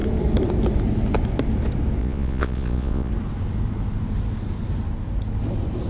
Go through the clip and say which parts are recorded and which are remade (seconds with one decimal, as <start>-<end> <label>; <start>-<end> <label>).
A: 0.0-2.0 recorded; 2.0-3.1 remade; 3.1-5.9 recorded